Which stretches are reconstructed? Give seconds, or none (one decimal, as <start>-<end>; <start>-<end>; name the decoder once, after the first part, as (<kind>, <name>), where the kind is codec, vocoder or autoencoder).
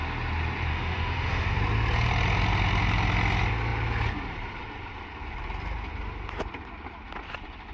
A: 0.7-1.6 (autoencoder, DAC-VAE)